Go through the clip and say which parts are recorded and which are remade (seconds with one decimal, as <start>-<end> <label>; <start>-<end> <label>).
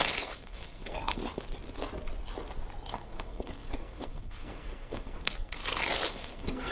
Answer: 0.0-1.2 remade; 1.2-2.9 recorded; 2.9-5.6 remade; 5.6-6.1 recorded; 6.1-6.7 remade